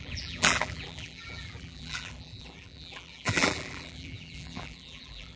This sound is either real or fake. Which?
fake